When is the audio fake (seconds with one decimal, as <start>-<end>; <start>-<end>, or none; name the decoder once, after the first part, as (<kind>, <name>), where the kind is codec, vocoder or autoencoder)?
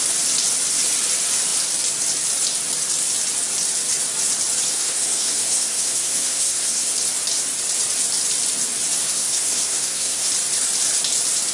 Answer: 4.7-6.9 (codec, SNAC); 9.0-10.3